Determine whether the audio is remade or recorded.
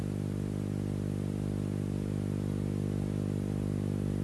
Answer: recorded